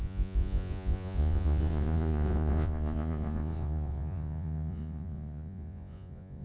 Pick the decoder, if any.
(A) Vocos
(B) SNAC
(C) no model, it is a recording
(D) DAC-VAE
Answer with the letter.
A